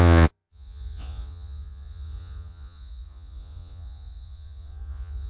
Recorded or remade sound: remade